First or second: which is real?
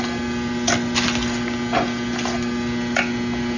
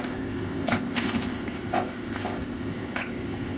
first